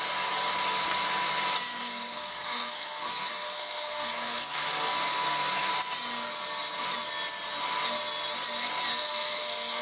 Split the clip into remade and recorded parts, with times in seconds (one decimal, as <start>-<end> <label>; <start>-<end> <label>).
0.0-1.8 recorded; 1.8-5.7 remade; 5.7-8.9 recorded; 8.9-9.8 remade